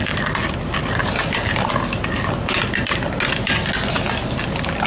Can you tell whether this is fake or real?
real